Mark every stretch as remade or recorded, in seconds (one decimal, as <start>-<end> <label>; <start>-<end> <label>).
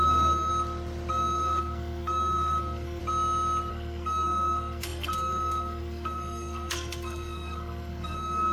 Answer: 0.0-0.5 remade; 0.5-1.1 recorded; 1.1-3.0 remade; 3.0-3.7 recorded; 3.7-8.5 remade